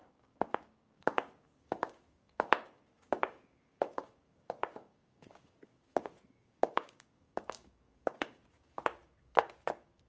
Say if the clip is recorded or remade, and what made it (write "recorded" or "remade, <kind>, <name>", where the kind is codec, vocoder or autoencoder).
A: remade, codec, DAC